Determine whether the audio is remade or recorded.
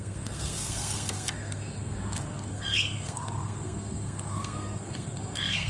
remade